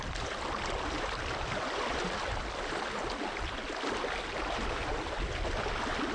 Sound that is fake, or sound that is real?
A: real